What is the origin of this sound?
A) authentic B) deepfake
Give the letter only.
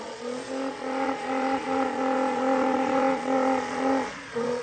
B